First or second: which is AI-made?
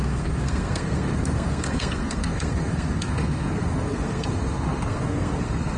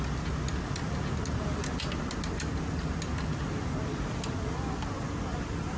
first